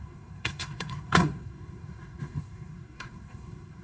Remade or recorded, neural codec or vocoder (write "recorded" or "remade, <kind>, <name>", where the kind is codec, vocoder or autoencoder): remade, codec, SNAC